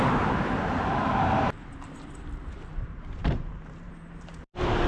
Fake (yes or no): yes